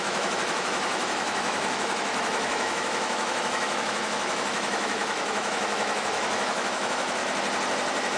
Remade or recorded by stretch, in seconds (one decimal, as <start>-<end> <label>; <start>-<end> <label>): 0.0-7.2 remade; 7.2-8.2 recorded